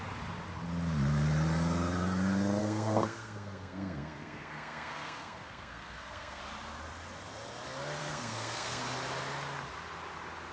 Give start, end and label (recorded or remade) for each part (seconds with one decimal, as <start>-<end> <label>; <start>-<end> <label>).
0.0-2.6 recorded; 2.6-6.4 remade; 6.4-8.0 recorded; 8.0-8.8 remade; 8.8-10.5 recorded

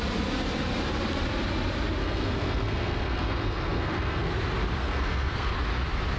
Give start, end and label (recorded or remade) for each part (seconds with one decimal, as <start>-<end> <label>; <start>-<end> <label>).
0.0-2.0 recorded; 2.0-4.3 remade; 4.3-4.8 recorded; 4.8-5.5 remade; 5.5-6.2 recorded

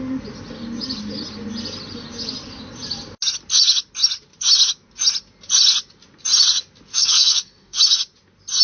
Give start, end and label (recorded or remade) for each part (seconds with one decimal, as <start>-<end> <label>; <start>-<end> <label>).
0.0-6.9 recorded; 6.9-7.8 remade; 7.8-8.6 recorded

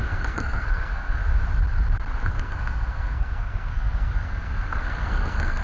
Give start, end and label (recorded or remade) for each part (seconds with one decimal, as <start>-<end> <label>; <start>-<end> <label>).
0.0-1.2 remade; 1.2-2.3 recorded; 2.3-5.6 remade

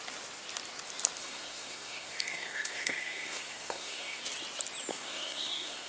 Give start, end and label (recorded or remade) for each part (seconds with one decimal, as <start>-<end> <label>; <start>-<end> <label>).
0.0-1.2 recorded; 1.2-4.2 remade; 4.2-4.9 recorded; 4.9-5.9 remade